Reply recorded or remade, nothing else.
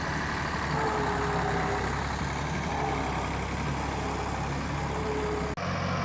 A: recorded